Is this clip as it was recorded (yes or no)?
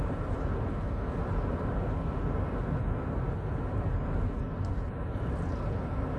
yes